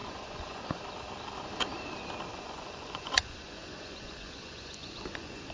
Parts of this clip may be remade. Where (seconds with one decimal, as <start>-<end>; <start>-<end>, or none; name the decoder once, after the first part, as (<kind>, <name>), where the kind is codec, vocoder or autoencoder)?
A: 0.0-0.8 (vocoder, Vocos); 2.3-5.5